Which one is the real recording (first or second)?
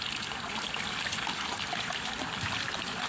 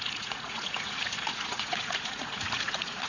first